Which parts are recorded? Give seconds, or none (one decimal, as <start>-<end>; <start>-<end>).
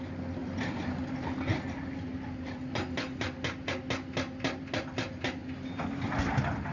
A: 0.0-6.7